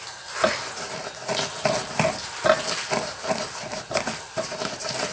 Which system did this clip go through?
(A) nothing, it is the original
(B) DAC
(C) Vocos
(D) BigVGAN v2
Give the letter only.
A